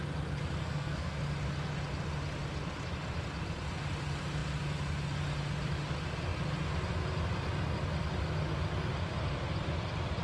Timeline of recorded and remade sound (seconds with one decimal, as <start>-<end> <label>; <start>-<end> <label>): 0.0-0.6 recorded; 0.6-1.2 remade; 1.2-10.2 recorded